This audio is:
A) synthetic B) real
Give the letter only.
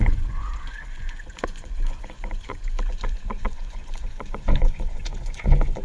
A